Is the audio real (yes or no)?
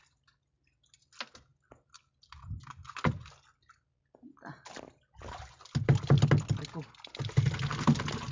yes